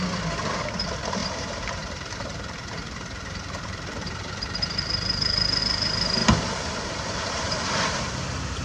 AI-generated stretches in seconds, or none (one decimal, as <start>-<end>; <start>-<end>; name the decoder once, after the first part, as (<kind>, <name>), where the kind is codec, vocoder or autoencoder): 1.2-5.6 (vocoder, BigVGAN v2); 6.2-8.2